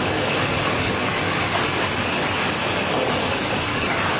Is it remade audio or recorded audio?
remade